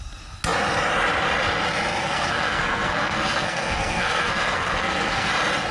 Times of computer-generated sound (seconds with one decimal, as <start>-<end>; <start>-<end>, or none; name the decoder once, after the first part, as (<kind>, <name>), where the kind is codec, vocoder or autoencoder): 2.0-5.3 (codec, SNAC)